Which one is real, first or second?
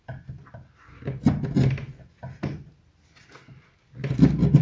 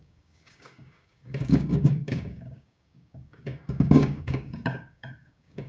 first